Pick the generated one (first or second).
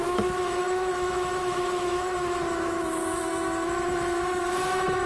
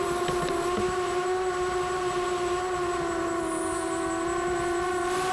first